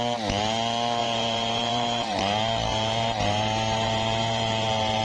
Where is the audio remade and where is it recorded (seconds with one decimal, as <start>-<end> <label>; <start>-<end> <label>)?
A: 0.0-1.0 recorded; 1.0-2.2 remade; 2.2-2.7 recorded; 2.7-5.0 remade